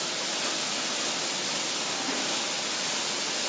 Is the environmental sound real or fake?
real